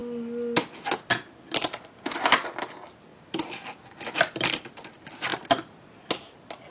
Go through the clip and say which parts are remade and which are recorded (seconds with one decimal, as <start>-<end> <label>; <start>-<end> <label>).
0.0-3.1 recorded; 3.1-3.7 remade; 3.7-6.7 recorded